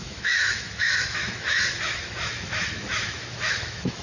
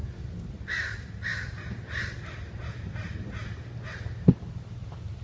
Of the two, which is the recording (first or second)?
second